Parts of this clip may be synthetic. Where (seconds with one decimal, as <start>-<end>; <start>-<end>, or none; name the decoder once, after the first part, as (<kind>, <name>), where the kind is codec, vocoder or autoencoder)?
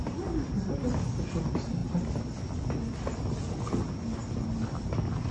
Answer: none